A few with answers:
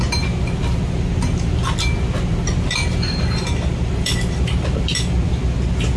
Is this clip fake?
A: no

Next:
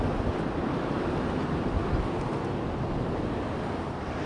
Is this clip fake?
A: no